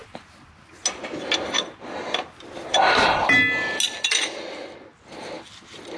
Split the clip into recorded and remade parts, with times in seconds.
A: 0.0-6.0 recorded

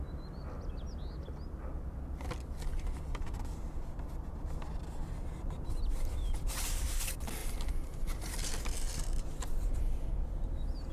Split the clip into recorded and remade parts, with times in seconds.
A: 0.0-4.8 recorded; 4.8-6.4 remade; 6.4-7.4 recorded; 7.4-9.8 remade; 9.8-10.9 recorded

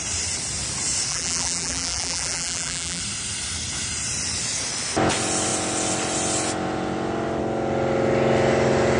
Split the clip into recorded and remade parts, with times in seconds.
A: 0.0-1.1 recorded; 1.1-3.0 remade; 3.0-9.0 recorded